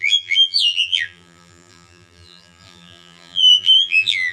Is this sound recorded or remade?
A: remade